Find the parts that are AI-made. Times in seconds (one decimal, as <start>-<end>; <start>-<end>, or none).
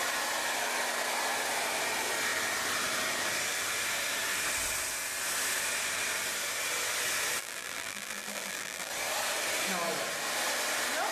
7.4-8.9